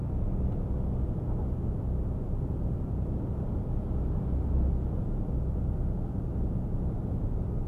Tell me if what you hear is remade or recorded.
recorded